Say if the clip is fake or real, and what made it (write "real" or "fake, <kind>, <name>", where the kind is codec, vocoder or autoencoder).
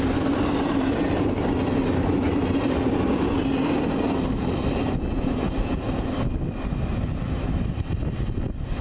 real